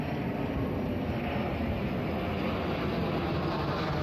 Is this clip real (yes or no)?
yes